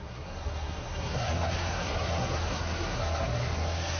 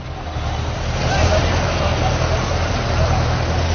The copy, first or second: first